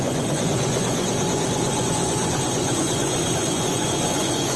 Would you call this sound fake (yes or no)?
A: yes